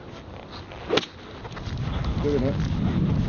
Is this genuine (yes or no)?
yes